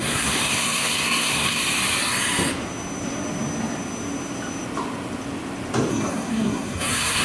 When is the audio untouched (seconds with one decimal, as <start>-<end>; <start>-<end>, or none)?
1.6-5.9